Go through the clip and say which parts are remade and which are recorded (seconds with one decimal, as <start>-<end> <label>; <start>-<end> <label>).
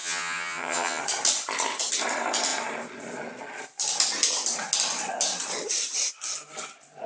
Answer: 0.0-1.0 remade; 1.0-7.1 recorded